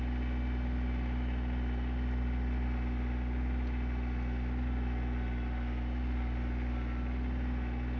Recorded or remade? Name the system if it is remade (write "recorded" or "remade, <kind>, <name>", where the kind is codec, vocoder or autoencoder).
recorded